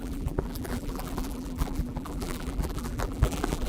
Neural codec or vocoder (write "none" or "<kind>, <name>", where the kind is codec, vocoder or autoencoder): vocoder, BigVGAN v2